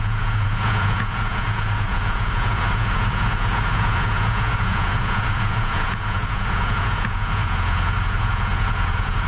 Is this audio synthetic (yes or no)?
yes